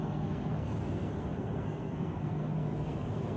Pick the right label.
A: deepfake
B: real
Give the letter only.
A